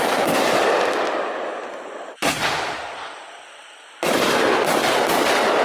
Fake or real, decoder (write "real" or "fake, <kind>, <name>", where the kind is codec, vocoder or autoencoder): real